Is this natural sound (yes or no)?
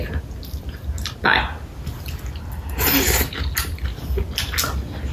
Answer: yes